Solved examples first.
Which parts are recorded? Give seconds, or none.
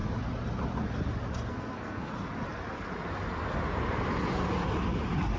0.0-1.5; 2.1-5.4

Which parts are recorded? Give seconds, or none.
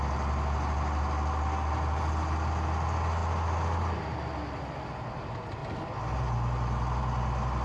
0.0-7.6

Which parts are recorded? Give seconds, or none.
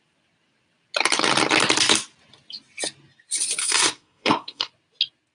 0.0-3.6; 4.7-5.3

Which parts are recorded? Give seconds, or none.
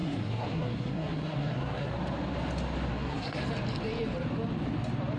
1.9-2.9; 3.4-5.2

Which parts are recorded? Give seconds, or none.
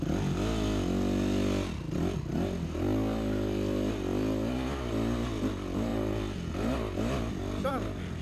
0.0-8.2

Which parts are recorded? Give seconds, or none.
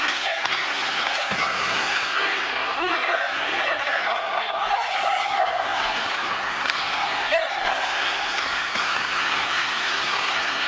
none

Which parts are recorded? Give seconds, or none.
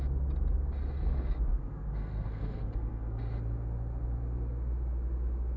0.0-1.5; 3.2-5.6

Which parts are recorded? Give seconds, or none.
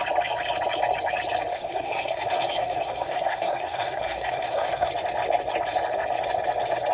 0.0-1.5; 4.9-6.9